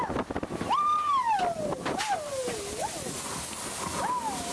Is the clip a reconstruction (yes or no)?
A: no